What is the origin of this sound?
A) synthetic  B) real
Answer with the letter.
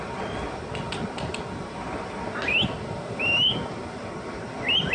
B